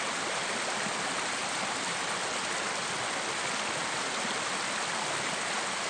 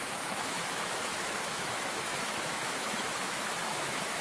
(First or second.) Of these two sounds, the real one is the first